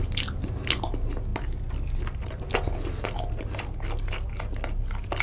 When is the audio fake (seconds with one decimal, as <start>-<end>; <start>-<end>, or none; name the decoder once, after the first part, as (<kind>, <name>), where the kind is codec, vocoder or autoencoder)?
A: none